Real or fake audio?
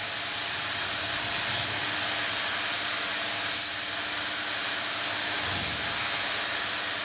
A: real